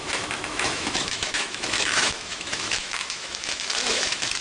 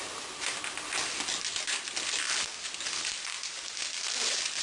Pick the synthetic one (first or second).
first